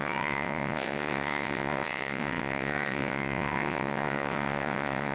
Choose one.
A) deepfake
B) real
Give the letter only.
A